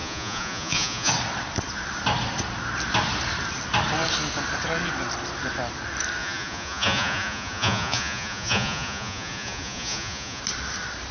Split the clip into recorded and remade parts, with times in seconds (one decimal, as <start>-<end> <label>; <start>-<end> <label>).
0.0-1.1 remade; 1.1-6.2 recorded; 6.2-10.4 remade; 10.4-11.1 recorded